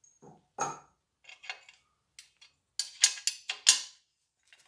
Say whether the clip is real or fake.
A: real